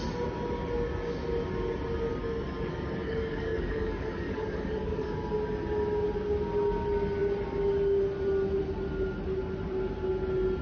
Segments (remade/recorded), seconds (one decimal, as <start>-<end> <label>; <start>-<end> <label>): 0.0-2.1 recorded; 2.1-5.3 remade; 5.3-10.6 recorded